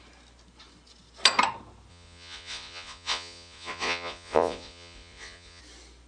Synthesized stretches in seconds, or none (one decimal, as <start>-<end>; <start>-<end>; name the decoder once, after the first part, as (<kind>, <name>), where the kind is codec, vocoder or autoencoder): 1.9-5.6 (vocoder, Vocos)